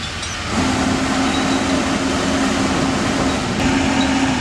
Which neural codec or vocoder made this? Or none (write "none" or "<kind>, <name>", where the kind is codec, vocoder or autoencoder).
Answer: none